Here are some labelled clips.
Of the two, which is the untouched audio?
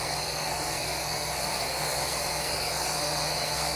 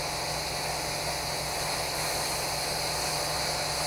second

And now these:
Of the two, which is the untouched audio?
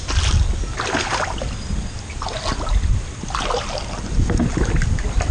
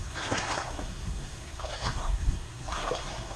first